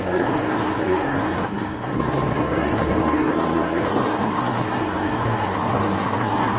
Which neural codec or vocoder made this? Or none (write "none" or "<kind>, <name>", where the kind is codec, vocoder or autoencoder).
codec, SNAC